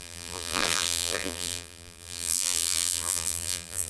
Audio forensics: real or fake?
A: fake